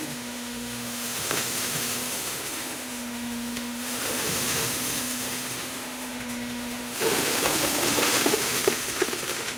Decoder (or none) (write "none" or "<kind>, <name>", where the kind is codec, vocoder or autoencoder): autoencoder, DAC-VAE